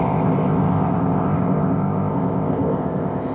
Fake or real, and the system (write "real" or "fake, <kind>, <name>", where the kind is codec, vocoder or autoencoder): fake, codec, ZipCodec